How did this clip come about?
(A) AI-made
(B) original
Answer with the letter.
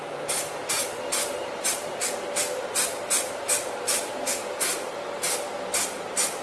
A